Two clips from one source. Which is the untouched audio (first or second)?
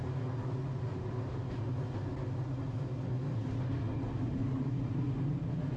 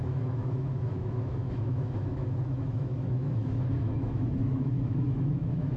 first